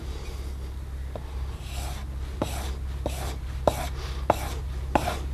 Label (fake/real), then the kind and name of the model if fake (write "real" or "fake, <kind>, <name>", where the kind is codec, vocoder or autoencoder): real